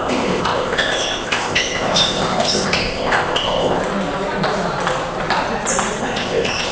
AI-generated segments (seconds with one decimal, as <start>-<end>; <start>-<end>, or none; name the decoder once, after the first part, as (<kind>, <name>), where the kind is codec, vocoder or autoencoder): 0.0-3.8 (codec, ZipCodec); 6.0-6.7